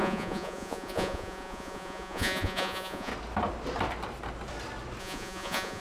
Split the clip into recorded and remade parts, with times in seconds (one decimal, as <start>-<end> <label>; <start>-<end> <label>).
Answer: 0.0-3.1 remade; 3.1-5.0 recorded; 5.0-5.8 remade